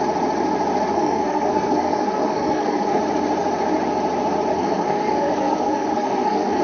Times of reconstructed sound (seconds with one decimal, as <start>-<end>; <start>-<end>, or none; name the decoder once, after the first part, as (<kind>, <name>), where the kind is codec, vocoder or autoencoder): 0.9-3.0 (codec, SNAC); 4.5-6.6